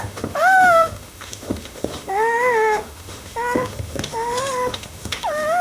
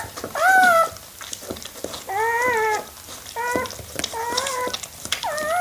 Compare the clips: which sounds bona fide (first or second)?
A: second